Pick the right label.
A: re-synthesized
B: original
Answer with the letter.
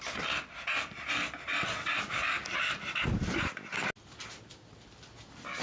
B